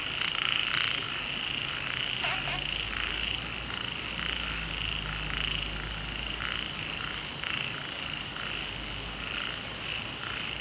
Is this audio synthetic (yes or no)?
no